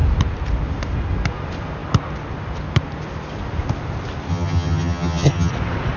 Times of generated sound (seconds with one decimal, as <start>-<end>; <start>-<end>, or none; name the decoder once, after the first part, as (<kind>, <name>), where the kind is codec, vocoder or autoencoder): 4.3-5.5 (vocoder, HiFi-GAN)